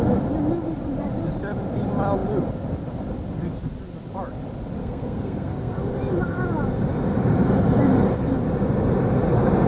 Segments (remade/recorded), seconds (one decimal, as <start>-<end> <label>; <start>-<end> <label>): 0.0-4.8 recorded; 4.8-5.7 remade; 5.7-9.7 recorded